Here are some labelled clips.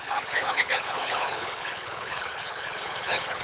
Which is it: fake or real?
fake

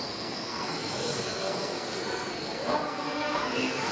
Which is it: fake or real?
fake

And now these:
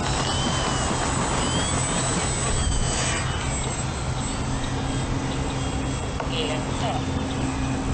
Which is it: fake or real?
real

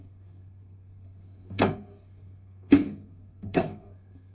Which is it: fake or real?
fake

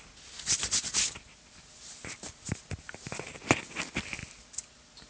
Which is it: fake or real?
real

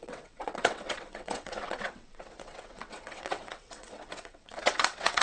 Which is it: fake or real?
fake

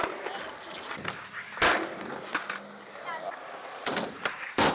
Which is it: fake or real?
fake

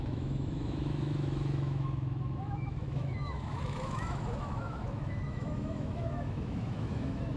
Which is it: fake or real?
fake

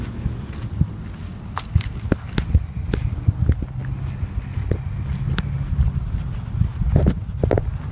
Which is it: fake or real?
real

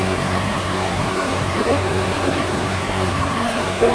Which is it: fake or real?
fake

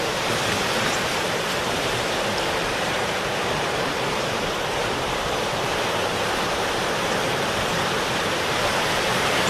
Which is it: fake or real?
fake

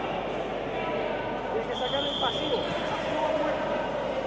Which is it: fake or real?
real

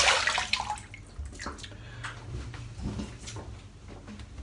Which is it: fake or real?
real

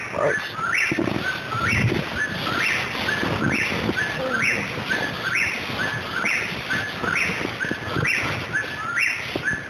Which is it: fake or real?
real